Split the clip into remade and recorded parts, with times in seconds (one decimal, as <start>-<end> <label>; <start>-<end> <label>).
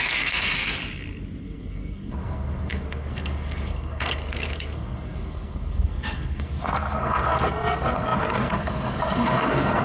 0.0-0.8 remade; 0.8-1.4 recorded; 1.4-9.8 remade